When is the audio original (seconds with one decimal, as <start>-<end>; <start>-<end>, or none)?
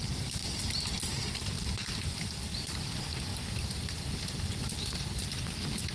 0.0-5.9